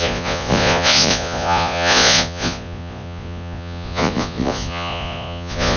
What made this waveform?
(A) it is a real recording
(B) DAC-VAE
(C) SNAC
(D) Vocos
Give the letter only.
D